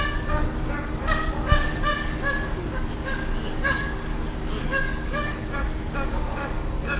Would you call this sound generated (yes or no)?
yes